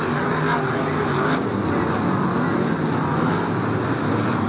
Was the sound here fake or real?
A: real